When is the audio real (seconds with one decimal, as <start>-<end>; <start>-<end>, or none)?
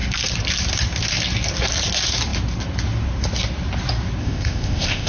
0.0-4.2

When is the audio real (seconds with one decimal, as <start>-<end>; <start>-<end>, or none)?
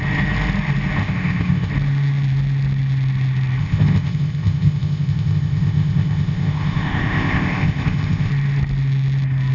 0.0-1.0; 1.7-3.6; 8.3-9.5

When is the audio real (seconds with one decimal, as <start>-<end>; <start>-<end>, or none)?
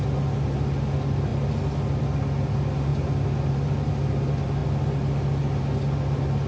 0.0-6.5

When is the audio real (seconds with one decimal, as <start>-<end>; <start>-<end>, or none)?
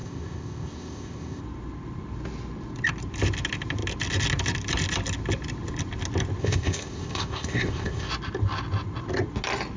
1.4-6.4; 8.1-9.8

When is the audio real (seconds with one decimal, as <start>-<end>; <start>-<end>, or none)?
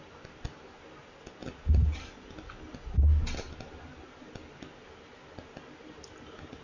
0.0-6.6